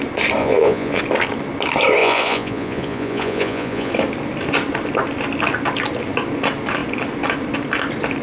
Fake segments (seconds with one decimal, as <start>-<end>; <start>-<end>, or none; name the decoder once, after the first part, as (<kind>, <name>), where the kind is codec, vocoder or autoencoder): 0.4-1.0 (vocoder, Vocos); 2.0-3.9